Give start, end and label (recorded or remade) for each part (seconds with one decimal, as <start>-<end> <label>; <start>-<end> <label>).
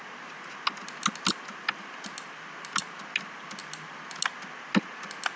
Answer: 0.0-5.4 recorded